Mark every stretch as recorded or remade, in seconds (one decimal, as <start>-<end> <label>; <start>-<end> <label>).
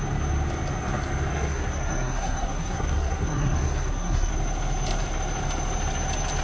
0.0-1.3 recorded; 1.3-4.3 remade; 4.3-6.4 recorded